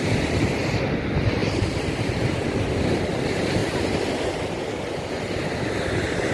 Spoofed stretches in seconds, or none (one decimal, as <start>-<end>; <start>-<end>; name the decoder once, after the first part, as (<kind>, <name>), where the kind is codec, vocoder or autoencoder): none